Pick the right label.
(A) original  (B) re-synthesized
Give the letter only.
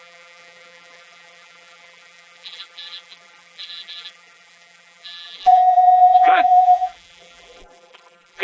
B